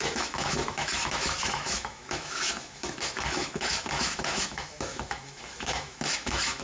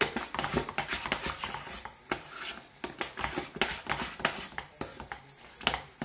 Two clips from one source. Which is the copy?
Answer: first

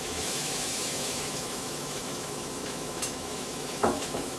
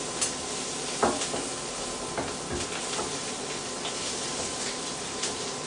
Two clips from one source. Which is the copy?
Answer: first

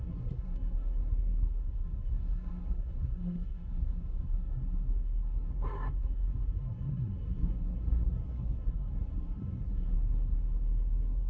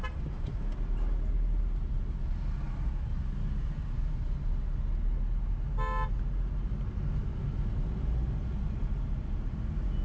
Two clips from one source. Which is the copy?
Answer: first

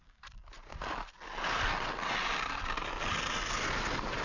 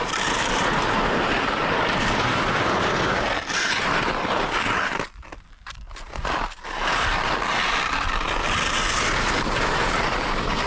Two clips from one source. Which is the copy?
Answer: second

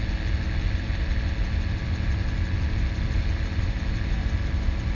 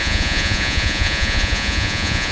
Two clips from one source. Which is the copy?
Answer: second